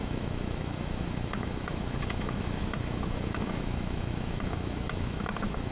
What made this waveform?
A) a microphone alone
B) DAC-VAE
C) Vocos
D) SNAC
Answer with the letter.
B